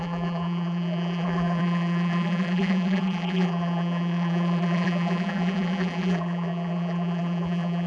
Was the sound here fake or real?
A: fake